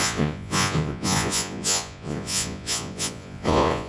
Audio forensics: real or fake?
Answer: fake